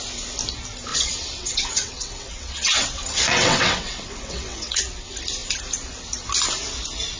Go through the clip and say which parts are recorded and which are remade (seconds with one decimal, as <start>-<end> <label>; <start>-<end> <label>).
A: 0.0-0.9 recorded; 0.9-4.8 remade; 4.8-7.2 recorded